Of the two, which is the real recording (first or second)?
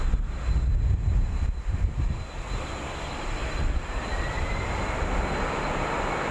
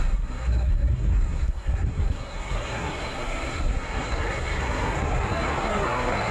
first